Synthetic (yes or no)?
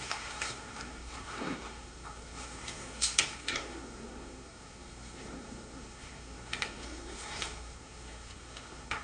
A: yes